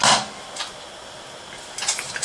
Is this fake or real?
real